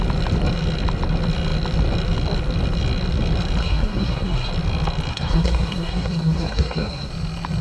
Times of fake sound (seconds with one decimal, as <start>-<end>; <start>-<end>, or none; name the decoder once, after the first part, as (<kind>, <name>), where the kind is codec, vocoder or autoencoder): 3.6-4.5 (codec, SNAC); 5.1-7.1